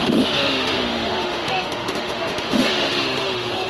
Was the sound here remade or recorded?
remade